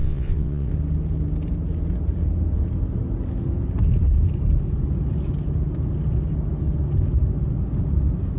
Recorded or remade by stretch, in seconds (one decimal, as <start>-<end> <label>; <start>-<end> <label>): 0.0-0.7 remade; 0.7-8.4 recorded